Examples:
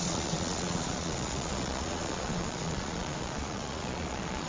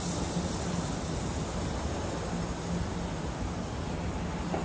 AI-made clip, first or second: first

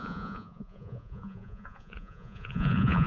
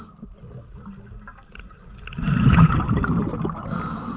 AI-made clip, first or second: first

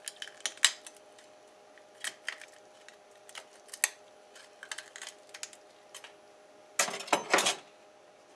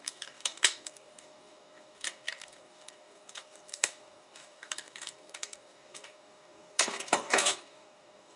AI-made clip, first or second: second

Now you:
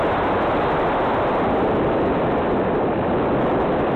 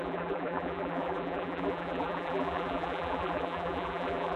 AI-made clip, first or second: second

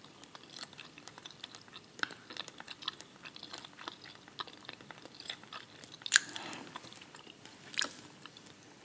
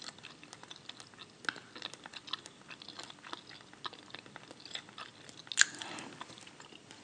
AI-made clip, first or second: first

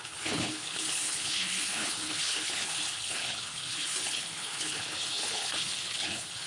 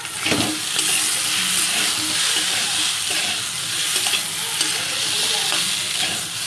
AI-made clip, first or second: first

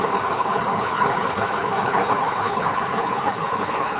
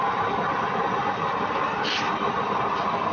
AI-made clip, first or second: first